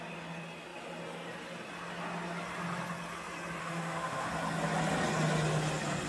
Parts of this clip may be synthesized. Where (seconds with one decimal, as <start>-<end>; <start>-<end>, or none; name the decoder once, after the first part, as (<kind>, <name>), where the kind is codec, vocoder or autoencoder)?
3.6-4.3 (autoencoder, DAC-VAE)